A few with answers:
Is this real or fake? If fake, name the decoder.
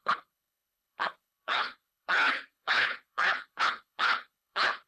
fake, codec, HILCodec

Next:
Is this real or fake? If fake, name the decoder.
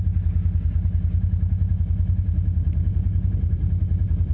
real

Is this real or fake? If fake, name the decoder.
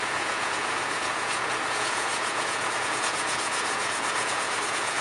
fake, vocoder, Vocos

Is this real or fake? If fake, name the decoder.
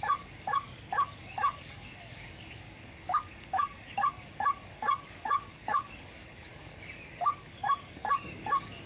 fake, codec, DAC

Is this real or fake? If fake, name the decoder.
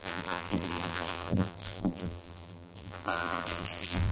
fake, vocoder, BigVGAN v2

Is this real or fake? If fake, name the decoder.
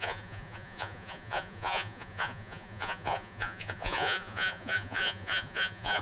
fake, vocoder, Vocos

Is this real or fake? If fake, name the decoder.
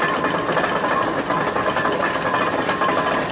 real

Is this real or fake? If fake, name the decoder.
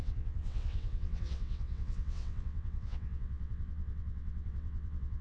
fake, vocoder, WaveNeXt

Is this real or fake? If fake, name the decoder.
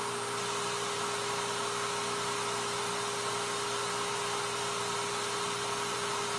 real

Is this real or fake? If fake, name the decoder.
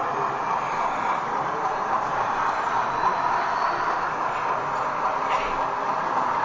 real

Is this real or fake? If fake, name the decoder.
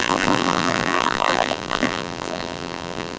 fake, vocoder, BigVGAN v2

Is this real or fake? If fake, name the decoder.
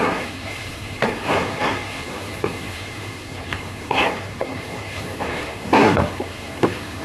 fake, codec, SNAC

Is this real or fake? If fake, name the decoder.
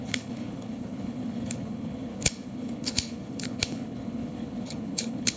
fake, codec, HILCodec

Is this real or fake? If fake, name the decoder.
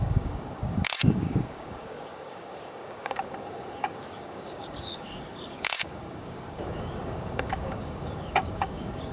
fake, codec, DAC